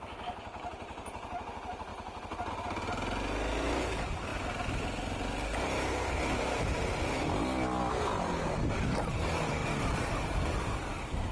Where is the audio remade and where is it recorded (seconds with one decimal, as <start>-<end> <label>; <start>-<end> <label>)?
0.0-11.3 recorded